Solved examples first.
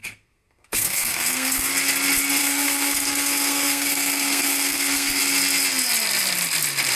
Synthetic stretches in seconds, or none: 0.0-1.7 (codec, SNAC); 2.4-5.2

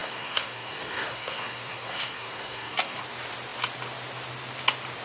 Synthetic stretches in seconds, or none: 0.0-3.0 (codec, SNAC)

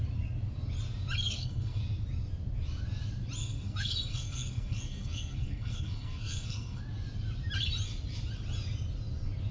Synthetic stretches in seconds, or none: 1.2-1.8 (codec, SNAC); 3.4-6.8

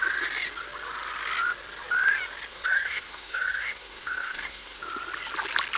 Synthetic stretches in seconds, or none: 2.5-4.8 (codec, SNAC)

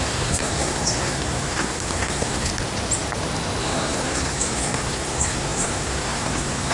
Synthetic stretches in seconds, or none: 0.0-2.5 (codec, SNAC); 3.6-6.7

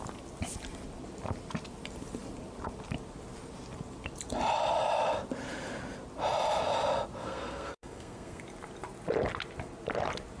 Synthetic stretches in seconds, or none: 7.2-8.4 (codec, SNAC)